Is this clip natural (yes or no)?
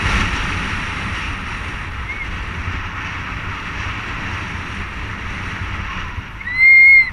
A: yes